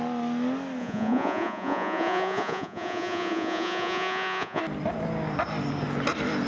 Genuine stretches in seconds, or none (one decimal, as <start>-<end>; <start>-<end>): 0.0-0.8; 4.6-6.5